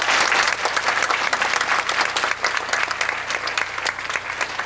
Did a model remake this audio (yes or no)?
no